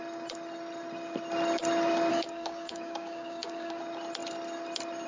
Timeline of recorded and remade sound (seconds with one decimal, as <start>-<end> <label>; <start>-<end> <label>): 0.0-2.1 recorded; 2.1-3.8 remade; 3.8-5.1 recorded